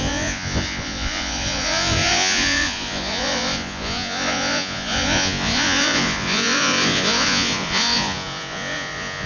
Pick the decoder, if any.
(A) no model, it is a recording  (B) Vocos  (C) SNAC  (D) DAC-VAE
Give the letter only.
B